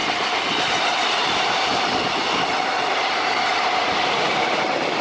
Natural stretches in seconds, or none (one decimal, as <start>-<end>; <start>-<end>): 3.0-3.5